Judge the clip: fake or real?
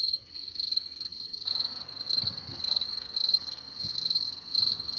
fake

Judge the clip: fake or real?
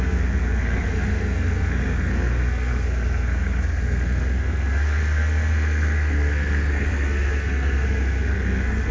fake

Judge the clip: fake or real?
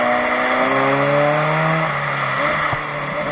real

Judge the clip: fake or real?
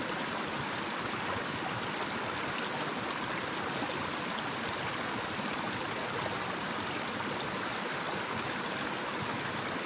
real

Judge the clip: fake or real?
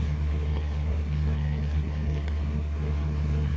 fake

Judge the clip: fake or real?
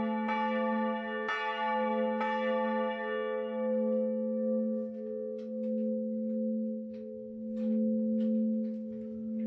real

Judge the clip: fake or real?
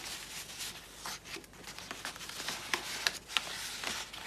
real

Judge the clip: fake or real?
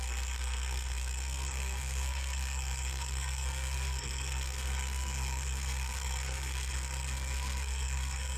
fake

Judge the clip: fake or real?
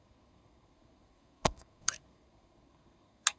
fake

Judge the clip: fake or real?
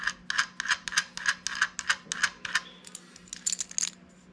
real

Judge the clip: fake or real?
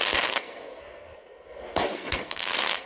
fake